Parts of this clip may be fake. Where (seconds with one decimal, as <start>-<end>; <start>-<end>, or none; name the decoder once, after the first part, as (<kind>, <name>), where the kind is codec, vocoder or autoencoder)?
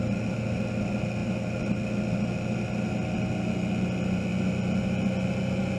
none